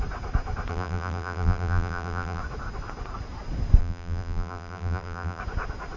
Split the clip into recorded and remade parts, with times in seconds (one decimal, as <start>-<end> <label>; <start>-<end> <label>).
0.0-0.7 recorded; 0.7-2.4 remade; 2.4-3.8 recorded; 3.8-5.4 remade; 5.4-6.0 recorded